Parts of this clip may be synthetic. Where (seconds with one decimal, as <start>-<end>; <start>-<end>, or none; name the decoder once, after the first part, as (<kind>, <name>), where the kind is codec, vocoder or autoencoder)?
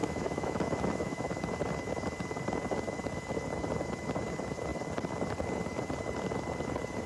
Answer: 0.0-1.4 (autoencoder, DAC-VAE)